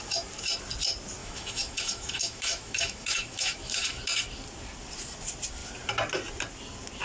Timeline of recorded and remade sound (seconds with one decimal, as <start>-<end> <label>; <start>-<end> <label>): 0.0-1.2 recorded; 1.2-4.0 remade; 4.0-7.0 recorded